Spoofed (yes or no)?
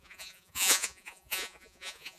yes